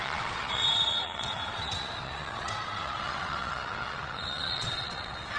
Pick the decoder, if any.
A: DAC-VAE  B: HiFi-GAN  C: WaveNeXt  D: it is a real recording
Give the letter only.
C